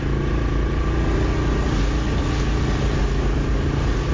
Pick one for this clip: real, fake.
real